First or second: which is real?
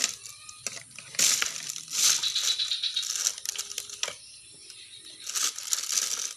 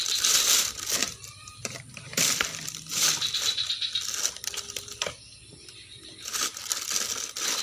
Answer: first